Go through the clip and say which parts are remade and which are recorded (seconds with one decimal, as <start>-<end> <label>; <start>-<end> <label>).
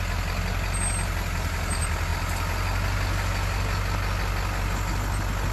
0.0-5.5 recorded